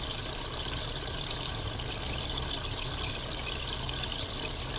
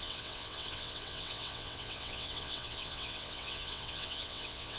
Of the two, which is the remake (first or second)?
second